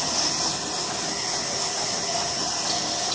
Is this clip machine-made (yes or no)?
no